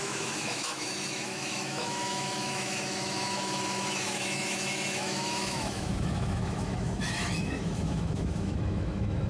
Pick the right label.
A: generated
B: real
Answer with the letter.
A